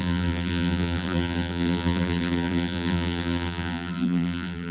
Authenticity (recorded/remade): remade